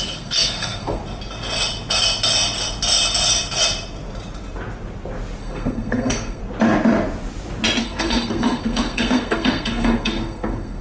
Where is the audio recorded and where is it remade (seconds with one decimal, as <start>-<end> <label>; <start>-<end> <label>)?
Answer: 0.0-1.0 remade; 1.0-5.4 recorded; 5.4-6.4 remade; 6.4-7.8 recorded; 7.8-10.8 remade